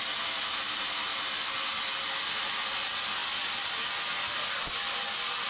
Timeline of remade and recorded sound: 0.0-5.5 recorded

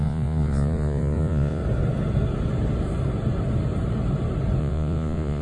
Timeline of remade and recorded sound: 0.0-1.6 remade; 1.6-4.6 recorded; 4.6-5.4 remade

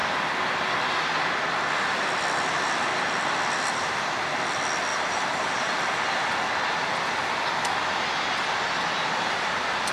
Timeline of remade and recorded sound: 0.0-4.9 recorded; 4.9-5.7 remade; 5.7-9.9 recorded

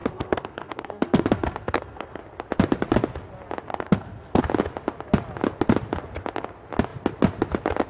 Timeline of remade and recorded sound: 0.0-2.2 remade; 2.2-3.7 recorded; 3.7-4.4 remade; 4.4-7.9 recorded

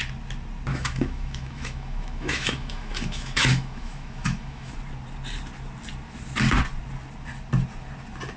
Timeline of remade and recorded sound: 0.0-0.7 recorded; 0.7-4.7 remade; 4.7-8.4 recorded

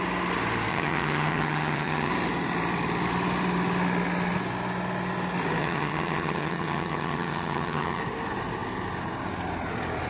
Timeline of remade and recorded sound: 0.0-0.7 recorded; 0.7-2.1 remade; 2.1-5.6 recorded; 5.6-8.0 remade; 8.0-10.1 recorded

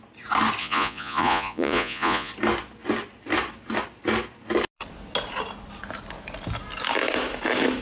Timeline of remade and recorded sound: 0.0-0.6 recorded; 0.6-2.3 remade; 2.3-7.8 recorded

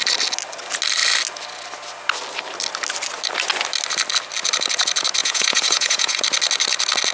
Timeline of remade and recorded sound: 0.0-5.2 recorded; 5.2-6.2 remade; 6.2-7.1 recorded